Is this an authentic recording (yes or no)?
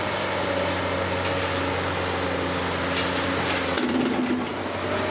yes